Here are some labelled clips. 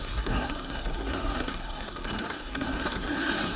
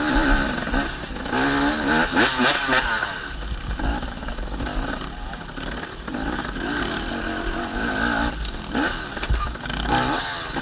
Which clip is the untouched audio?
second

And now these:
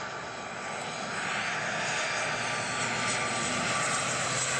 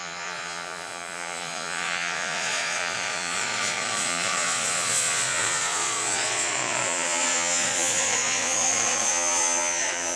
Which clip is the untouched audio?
first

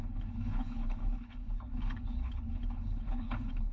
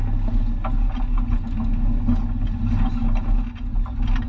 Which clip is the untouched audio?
second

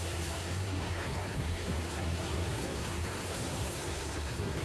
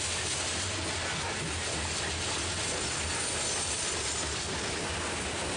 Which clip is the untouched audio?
second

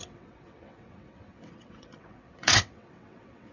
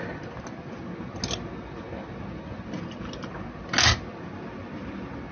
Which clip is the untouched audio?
second